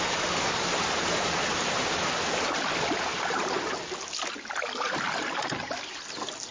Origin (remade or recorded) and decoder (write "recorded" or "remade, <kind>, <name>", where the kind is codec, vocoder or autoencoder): recorded